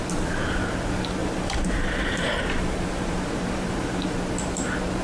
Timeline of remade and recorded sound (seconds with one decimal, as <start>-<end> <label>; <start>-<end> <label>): 0.0-1.2 recorded; 1.2-4.2 remade; 4.2-5.0 recorded